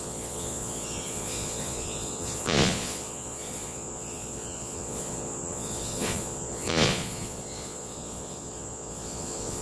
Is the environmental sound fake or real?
fake